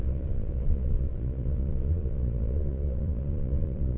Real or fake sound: fake